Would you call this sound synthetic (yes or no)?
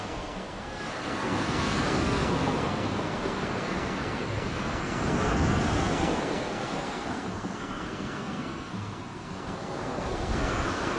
yes